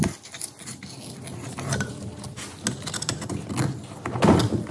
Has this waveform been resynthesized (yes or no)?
no